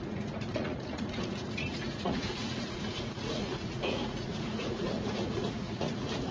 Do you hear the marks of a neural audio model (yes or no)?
yes